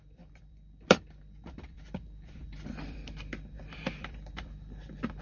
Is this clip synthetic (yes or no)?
yes